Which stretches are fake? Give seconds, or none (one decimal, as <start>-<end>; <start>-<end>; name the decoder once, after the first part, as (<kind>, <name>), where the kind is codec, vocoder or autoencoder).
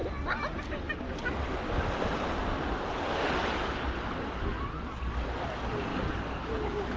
none